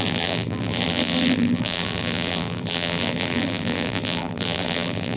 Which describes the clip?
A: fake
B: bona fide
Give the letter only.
A